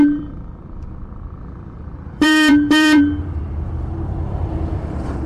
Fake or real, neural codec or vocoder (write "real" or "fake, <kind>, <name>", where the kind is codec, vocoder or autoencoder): fake, vocoder, BigVGAN v2